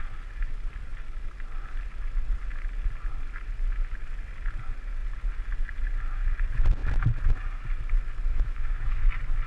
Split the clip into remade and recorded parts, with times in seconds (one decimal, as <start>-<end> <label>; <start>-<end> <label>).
0.0-8.3 recorded; 8.3-9.1 remade; 9.1-9.5 recorded